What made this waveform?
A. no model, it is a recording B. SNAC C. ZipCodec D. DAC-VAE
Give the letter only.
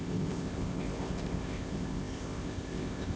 C